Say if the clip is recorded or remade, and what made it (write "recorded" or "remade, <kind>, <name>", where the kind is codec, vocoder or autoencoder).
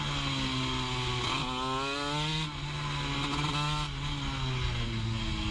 recorded